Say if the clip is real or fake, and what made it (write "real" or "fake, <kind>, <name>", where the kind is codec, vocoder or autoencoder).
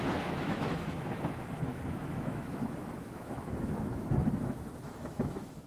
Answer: fake, autoencoder, DAC-VAE